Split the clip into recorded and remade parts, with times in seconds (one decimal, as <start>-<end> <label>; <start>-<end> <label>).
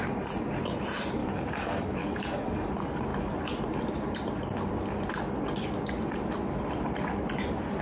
0.0-1.2 recorded; 1.2-2.7 remade; 2.7-7.8 recorded